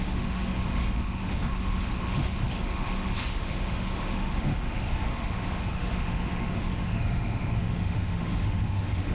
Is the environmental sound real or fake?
fake